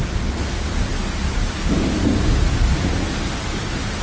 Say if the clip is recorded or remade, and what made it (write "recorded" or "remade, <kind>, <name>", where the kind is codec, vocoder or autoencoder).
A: recorded